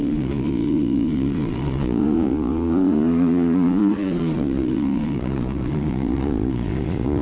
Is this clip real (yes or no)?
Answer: no